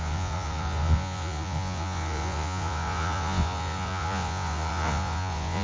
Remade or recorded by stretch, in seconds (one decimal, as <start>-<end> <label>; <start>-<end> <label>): 0.0-5.6 remade

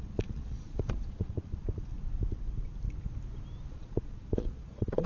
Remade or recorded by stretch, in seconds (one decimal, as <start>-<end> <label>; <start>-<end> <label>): 0.0-1.9 remade; 1.9-3.7 recorded; 3.7-5.1 remade

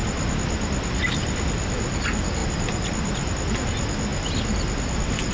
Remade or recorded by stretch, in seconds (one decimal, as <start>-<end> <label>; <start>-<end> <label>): 0.0-5.3 recorded